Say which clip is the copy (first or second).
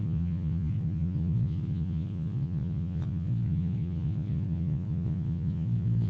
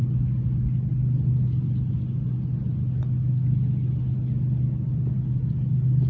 first